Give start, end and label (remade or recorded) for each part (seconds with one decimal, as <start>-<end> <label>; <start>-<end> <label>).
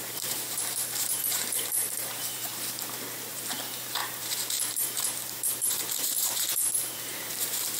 0.0-2.5 remade; 2.5-3.3 recorded; 3.3-7.8 remade